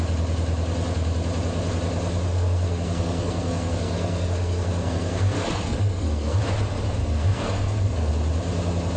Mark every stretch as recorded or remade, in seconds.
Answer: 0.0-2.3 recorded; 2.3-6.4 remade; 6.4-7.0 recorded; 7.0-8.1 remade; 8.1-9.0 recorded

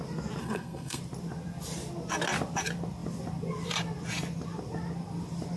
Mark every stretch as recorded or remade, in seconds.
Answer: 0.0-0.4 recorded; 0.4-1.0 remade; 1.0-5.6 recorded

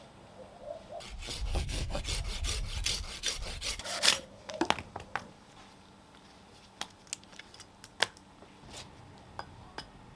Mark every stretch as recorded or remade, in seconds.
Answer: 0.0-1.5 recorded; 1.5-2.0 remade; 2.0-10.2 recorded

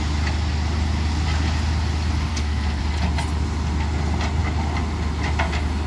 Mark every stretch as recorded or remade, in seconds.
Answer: 0.0-2.3 recorded; 2.3-2.8 remade; 2.8-5.9 recorded

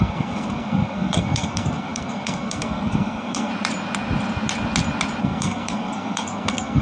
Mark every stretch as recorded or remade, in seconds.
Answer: 0.0-3.5 remade; 3.5-5.2 recorded; 5.2-6.8 remade

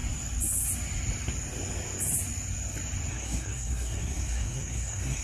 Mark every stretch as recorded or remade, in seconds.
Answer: 0.0-3.1 recorded; 3.1-5.2 remade

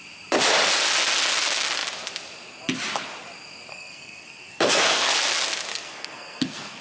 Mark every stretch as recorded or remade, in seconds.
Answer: 0.0-3.7 recorded; 3.7-5.2 remade; 5.2-5.7 recorded; 5.7-6.8 remade